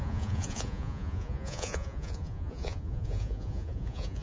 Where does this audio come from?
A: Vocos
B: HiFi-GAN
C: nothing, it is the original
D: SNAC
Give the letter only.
A